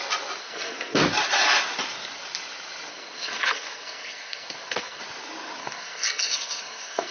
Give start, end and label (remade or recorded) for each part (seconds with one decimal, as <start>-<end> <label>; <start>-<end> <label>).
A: 0.0-0.4 recorded; 0.4-1.0 remade; 1.0-2.9 recorded; 2.9-5.0 remade; 5.0-5.6 recorded; 5.6-7.1 remade